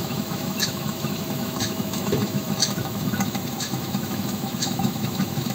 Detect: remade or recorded remade